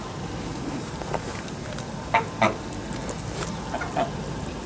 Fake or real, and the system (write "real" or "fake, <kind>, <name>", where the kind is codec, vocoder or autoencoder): real